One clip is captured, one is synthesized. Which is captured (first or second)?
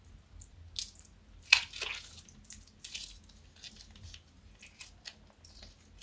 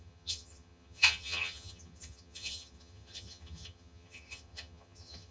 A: first